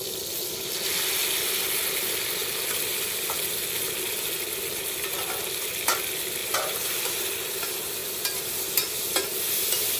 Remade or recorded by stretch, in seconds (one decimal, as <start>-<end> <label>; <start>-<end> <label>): 0.0-6.4 recorded; 6.4-7.0 remade; 7.0-10.0 recorded